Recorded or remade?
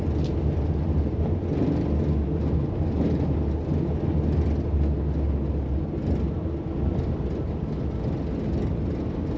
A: recorded